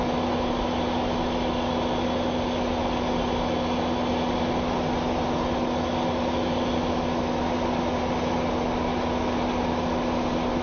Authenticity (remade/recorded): recorded